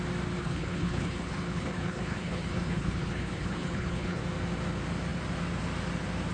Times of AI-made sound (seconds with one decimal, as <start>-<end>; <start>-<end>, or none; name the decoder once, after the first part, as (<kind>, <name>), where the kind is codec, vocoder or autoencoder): 0.4-4.2 (codec, HILCodec)